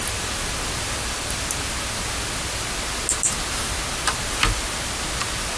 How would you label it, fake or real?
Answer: real